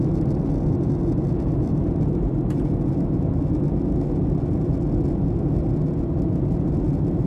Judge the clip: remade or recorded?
recorded